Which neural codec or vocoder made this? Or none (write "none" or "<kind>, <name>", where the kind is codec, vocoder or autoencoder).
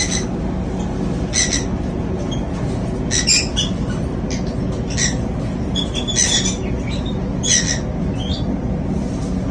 none